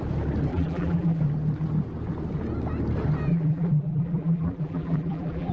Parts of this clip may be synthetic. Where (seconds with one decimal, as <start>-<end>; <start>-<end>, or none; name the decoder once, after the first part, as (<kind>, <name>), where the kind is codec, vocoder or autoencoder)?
0.5-1.2 (vocoder, BigVGAN v2); 3.3-5.5